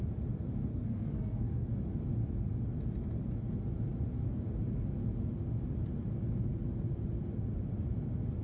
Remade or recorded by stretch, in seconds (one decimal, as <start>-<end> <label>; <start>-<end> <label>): 0.0-0.7 recorded; 0.7-1.7 remade; 1.7-8.4 recorded

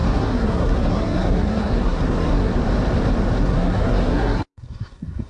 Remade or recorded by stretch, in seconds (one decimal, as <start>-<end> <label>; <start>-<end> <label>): 0.0-2.5 remade; 2.5-3.4 recorded; 3.4-5.3 remade

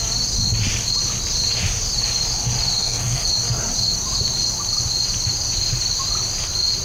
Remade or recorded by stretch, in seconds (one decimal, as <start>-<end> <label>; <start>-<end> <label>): 0.0-2.8 recorded; 2.8-3.3 remade; 3.3-6.8 recorded

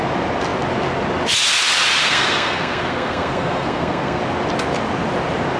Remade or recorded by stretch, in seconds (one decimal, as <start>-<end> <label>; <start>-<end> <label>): 0.0-2.0 recorded; 2.0-4.2 remade; 4.2-5.6 recorded

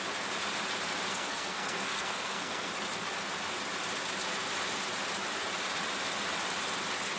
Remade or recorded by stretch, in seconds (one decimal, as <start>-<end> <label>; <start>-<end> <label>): 0.0-1.1 recorded; 1.1-2.7 remade; 2.7-7.2 recorded

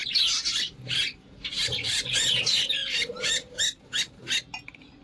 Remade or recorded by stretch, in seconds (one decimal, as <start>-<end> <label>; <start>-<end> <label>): 0.0-5.0 recorded

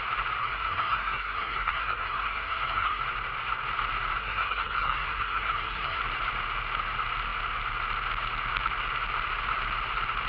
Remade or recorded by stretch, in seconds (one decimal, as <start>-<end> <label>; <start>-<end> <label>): 0.0-0.4 recorded; 0.4-3.0 remade; 3.0-4.2 recorded; 4.2-6.0 remade; 6.0-10.3 recorded

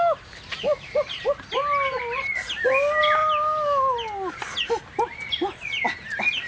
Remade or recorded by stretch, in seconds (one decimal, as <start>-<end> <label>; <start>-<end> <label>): 0.0-6.5 recorded